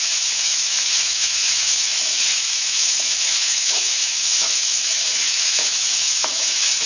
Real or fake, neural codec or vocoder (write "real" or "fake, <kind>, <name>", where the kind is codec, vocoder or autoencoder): fake, autoencoder, DAC-VAE